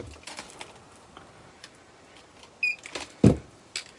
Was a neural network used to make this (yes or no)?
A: no